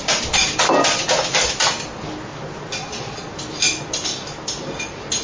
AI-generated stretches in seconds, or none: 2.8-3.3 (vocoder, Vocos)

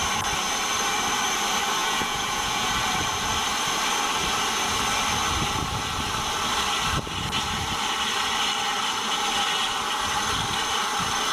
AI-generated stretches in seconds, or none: 1.8-2.7 (vocoder, Vocos)

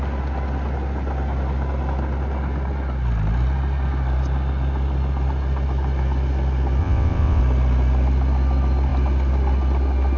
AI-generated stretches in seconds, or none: 6.8-7.4 (vocoder, WaveNeXt)

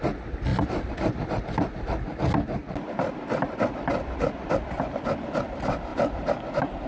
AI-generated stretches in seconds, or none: 0.5-1.4 (vocoder, BigVGAN v2); 2.6-5.1; 5.9-6.5

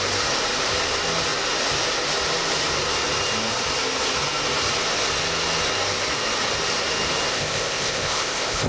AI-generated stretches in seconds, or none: 7.3-8.7 (codec, ZipCodec)

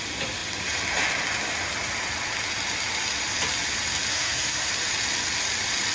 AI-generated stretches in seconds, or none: 4.1-4.7 (codec, SNAC)

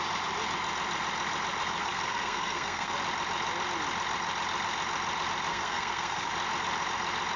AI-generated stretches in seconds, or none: 1.8-2.9 (codec, SNAC); 5.5-6.3

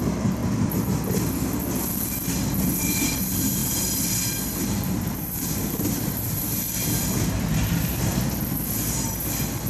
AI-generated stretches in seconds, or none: 0.0-0.4 (vocoder, BigVGAN v2); 3.0-3.6; 4.9-6.4